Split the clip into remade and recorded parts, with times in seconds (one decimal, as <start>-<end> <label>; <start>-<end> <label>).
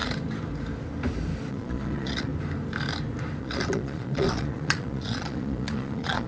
0.0-1.5 recorded; 1.5-2.3 remade; 2.3-3.4 recorded; 3.4-6.3 remade